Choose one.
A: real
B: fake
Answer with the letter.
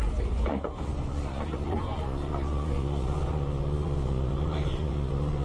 B